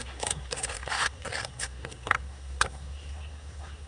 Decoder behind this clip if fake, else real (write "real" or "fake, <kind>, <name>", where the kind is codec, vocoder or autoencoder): fake, codec, SNAC